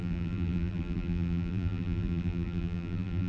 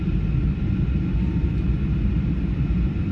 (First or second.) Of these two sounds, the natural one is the second